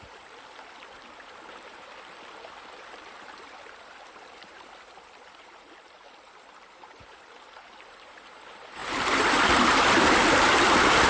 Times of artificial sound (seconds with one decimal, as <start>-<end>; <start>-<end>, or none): 0.0-11.1